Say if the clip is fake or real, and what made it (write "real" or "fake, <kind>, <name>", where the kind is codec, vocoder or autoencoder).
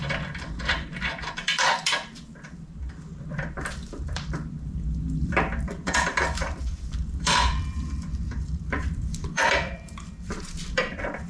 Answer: fake, vocoder, BigVGAN v2